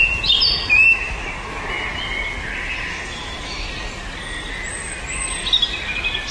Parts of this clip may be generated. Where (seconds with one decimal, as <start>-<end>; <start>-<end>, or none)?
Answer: 0.9-1.5; 2.9-3.7